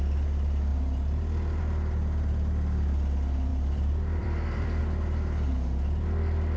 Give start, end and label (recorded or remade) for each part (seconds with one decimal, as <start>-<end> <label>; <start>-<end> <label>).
0.0-0.7 recorded; 0.7-1.6 remade; 1.6-3.5 recorded; 3.5-4.8 remade; 4.8-6.6 recorded